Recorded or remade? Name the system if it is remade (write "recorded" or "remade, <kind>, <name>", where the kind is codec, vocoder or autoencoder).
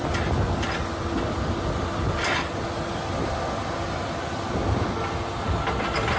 recorded